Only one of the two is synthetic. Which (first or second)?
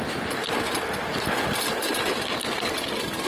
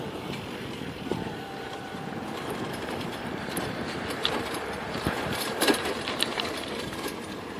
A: second